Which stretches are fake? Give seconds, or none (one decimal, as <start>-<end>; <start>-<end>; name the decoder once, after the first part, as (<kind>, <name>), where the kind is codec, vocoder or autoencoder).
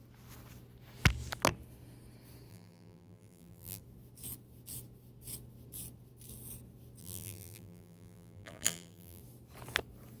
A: 2.5-3.8 (vocoder, BigVGAN v2); 7.0-9.2